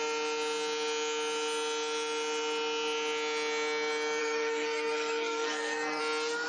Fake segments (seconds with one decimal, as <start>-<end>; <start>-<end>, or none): 4.2-6.0

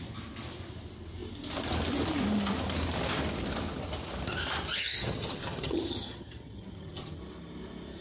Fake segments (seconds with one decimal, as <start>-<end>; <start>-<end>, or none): 4.7-7.2